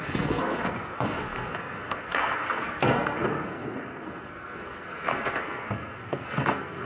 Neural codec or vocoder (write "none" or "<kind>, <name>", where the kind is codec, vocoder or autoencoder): codec, SNAC